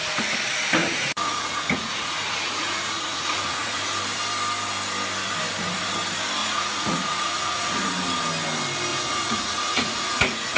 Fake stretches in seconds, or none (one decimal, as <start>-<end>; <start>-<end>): 0.8-3.8; 6.4-7.9; 8.9-10.6